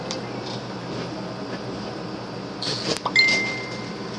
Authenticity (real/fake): real